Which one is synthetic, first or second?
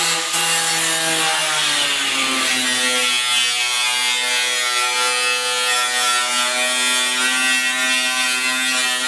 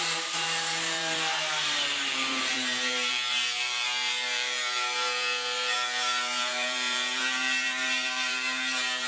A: second